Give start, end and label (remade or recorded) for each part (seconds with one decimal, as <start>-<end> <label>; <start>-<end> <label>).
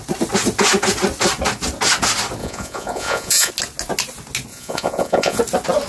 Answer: 0.0-2.4 recorded; 2.4-3.5 remade; 3.5-4.5 recorded; 4.5-5.4 remade; 5.4-5.9 recorded